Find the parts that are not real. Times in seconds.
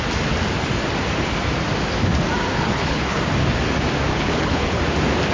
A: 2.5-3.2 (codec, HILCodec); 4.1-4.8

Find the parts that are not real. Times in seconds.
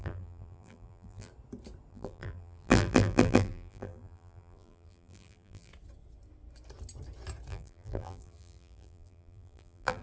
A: 0.0-1.3 (vocoder, BigVGAN v2); 1.9-5.7; 7.5-10.0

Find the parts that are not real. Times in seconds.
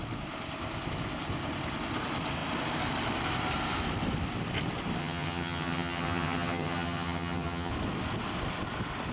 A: 5.0-7.7 (vocoder, HiFi-GAN)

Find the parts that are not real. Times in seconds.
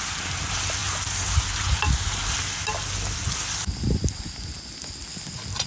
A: none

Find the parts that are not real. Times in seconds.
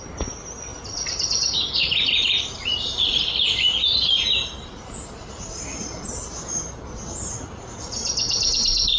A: none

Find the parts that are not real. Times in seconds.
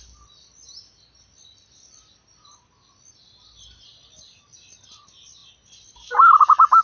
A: none